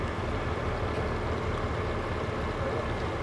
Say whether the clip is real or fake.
real